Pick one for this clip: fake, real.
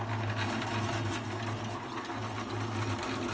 real